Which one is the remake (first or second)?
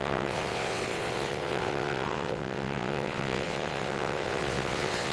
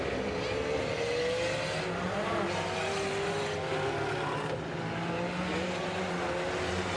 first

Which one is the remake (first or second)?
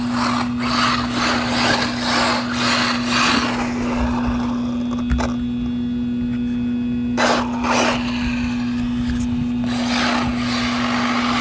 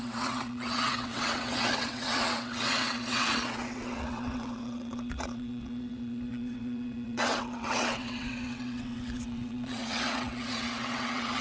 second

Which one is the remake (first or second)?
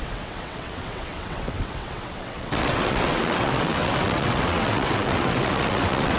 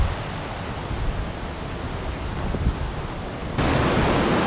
first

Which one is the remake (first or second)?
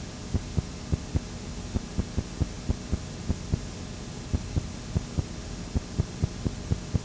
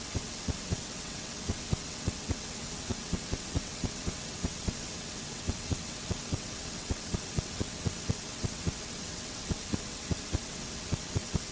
second